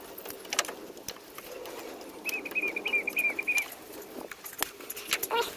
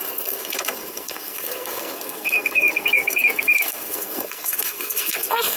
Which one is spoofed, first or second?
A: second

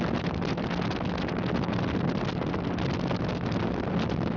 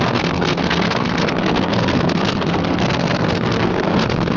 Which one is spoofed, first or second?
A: second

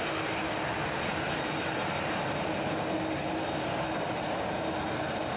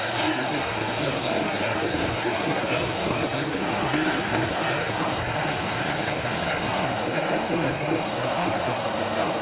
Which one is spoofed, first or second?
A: second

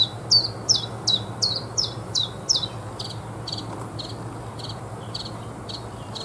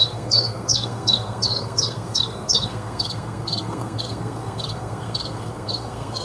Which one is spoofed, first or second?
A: second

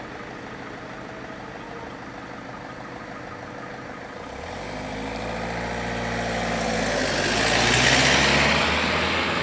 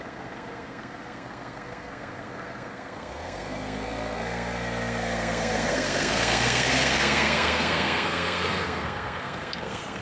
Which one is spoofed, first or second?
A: second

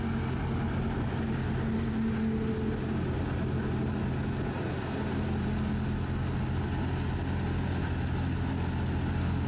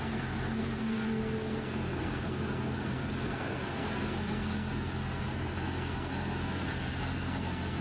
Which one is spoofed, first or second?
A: second